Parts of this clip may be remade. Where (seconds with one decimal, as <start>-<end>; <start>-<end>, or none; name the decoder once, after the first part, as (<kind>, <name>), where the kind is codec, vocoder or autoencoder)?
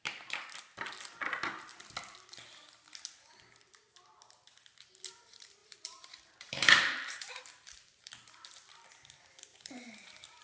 5.6-8.1 (vocoder, BigVGAN v2); 9.5-10.4